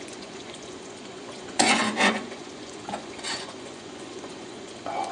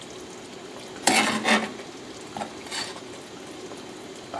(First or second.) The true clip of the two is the second